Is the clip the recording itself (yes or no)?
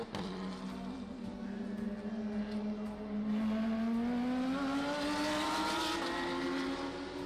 yes